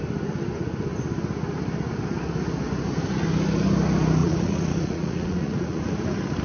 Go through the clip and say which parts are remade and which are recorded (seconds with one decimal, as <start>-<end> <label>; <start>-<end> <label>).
0.0-4.2 recorded; 4.2-5.8 remade; 5.8-6.4 recorded